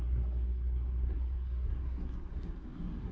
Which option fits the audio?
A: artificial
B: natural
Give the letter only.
A